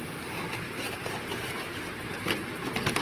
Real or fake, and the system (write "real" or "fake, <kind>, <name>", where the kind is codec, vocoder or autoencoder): real